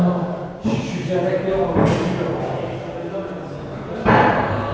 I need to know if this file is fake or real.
real